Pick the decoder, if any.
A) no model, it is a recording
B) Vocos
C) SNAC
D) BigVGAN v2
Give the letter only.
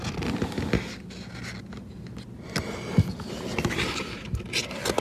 A